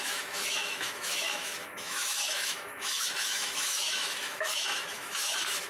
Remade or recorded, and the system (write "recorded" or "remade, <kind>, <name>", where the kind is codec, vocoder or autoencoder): remade, autoencoder, DAC-VAE